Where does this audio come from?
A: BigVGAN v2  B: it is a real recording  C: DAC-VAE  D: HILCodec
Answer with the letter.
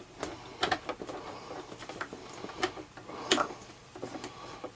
A